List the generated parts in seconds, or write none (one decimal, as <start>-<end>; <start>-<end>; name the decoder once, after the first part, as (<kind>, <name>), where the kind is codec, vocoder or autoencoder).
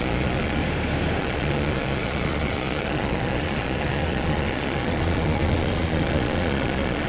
0.0-0.6 (vocoder, Vocos); 1.2-7.1